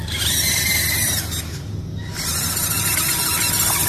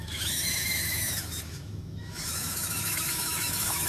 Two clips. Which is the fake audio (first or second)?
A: second